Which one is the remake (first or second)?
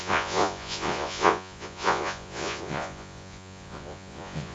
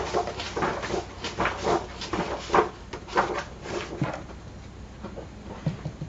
first